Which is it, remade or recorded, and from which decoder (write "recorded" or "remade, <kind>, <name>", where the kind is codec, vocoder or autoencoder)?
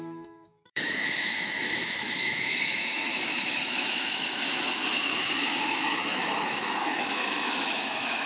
remade, autoencoder, DAC-VAE